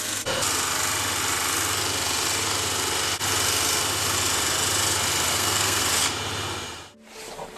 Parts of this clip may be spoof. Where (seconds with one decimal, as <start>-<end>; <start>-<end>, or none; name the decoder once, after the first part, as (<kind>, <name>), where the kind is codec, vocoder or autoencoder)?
5.3-5.8 (codec, SNAC)